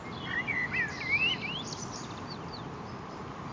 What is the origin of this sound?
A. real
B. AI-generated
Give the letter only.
A